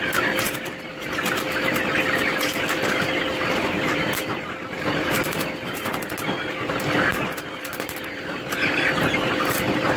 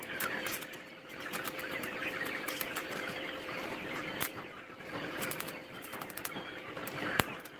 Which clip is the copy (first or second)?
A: second